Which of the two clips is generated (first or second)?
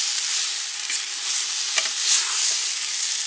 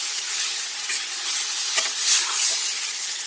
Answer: second